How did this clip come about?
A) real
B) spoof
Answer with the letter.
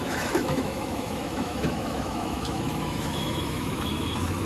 B